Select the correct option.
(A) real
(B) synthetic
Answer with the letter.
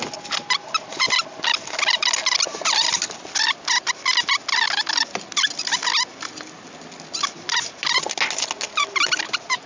A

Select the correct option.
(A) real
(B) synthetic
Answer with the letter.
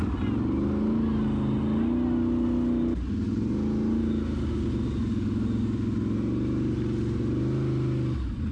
A